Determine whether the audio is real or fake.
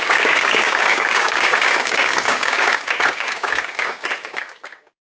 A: fake